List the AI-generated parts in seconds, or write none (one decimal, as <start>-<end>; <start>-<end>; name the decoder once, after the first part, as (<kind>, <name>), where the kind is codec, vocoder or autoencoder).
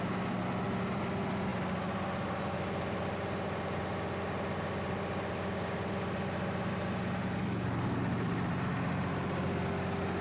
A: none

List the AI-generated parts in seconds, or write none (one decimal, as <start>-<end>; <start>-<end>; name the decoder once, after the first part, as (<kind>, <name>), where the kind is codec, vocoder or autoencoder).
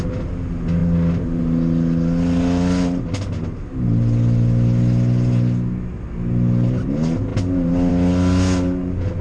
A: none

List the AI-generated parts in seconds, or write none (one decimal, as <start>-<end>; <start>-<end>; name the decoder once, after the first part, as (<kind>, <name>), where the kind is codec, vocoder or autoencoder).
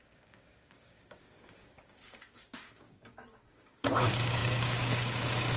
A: 0.0-5.6 (codec, DAC)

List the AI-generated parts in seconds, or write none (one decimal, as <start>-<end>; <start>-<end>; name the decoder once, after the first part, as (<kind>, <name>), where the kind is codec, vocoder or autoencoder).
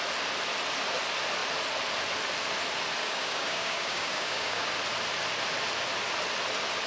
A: 3.0-4.7 (codec, DAC)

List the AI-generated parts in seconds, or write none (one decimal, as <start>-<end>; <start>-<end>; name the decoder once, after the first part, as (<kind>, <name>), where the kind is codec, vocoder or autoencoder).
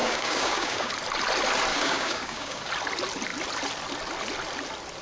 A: 0.0-0.9 (codec, DAC); 1.7-2.7